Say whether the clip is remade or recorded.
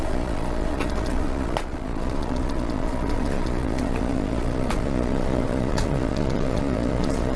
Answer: remade